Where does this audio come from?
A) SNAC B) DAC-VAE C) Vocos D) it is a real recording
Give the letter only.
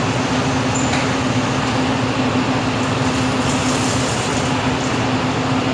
D